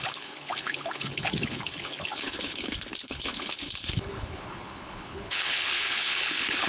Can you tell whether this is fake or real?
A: fake